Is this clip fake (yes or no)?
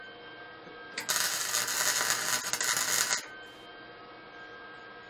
no